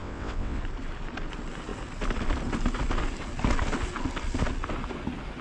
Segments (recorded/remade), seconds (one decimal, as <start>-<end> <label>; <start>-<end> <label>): 0.0-0.6 remade; 0.6-5.4 recorded